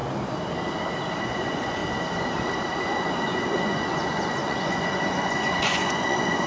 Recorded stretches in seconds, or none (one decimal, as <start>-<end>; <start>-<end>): 0.0-1.2; 1.8-2.8